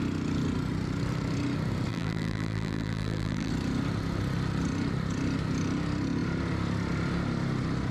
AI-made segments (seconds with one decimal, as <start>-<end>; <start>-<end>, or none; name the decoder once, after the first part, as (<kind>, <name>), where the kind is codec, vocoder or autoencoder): 1.9-3.5 (vocoder, BigVGAN v2)